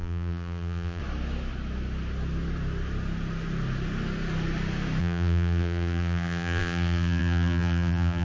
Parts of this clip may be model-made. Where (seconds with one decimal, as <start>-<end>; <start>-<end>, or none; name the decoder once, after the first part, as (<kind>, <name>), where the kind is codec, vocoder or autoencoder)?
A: 0.0-1.0 (vocoder, BigVGAN v2); 5.0-8.2